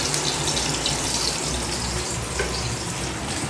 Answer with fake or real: real